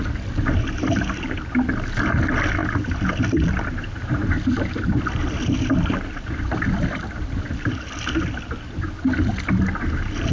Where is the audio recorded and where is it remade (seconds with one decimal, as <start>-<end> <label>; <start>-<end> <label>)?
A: 0.0-10.3 recorded